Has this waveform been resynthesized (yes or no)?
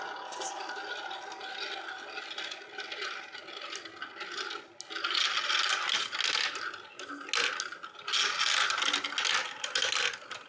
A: no